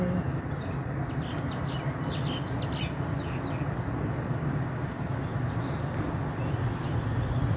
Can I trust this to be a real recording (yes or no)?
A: yes